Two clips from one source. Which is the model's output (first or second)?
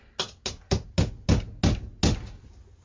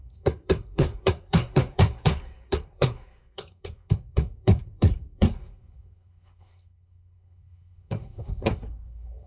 second